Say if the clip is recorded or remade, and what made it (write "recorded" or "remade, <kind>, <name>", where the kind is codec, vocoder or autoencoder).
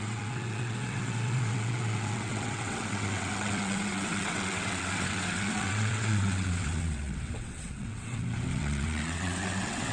remade, vocoder, WaveNeXt